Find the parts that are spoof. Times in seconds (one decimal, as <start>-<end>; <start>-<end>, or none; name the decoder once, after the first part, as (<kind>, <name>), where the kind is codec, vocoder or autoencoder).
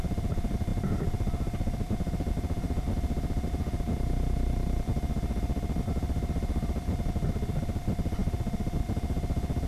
0.0-8.2 (vocoder, BigVGAN v2)